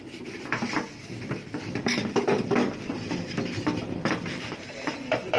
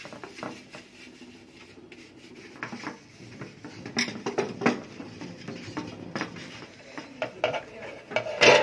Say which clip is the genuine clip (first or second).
second